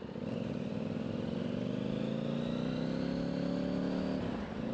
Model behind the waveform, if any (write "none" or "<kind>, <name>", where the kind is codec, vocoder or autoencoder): none